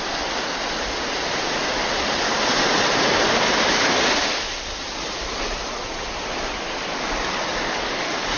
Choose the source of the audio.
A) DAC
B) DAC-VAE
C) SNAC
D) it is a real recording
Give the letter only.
D